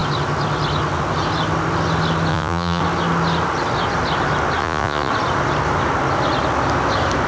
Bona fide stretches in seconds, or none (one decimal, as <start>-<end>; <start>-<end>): 0.0-2.3; 2.8-4.6; 5.1-7.3